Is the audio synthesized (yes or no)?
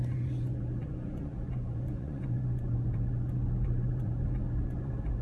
yes